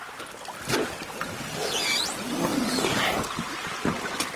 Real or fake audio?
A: real